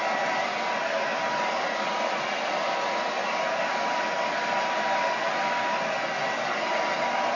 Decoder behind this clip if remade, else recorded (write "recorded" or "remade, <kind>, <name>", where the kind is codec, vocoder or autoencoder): recorded